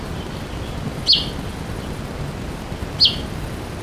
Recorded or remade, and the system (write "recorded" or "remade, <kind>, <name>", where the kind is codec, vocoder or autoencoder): recorded